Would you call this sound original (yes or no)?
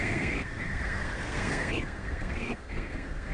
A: no